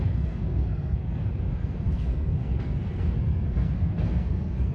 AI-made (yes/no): yes